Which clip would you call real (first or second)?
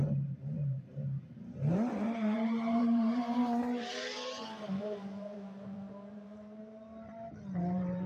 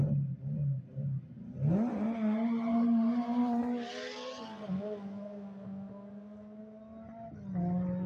second